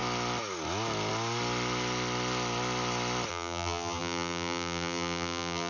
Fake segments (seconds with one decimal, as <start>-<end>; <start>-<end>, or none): 3.3-5.7

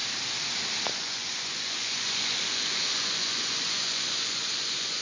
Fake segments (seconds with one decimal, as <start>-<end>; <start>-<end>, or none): 0.9-5.0

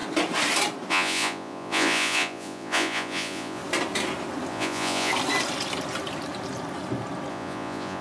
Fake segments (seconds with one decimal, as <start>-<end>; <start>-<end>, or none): 0.9-3.6; 4.5-5.1; 7.3-8.0

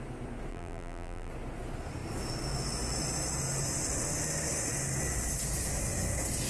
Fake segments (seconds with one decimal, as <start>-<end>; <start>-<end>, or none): 0.5-1.3